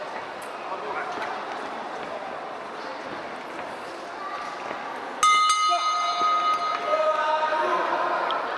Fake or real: real